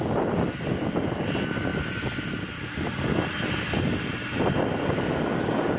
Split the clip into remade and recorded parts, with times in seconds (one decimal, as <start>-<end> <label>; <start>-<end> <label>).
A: 0.0-5.8 recorded